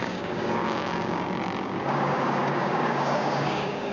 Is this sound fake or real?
fake